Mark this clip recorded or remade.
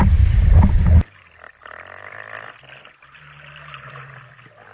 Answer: recorded